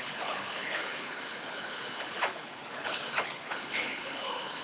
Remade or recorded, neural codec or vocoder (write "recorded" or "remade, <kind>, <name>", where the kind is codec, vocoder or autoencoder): remade, codec, HILCodec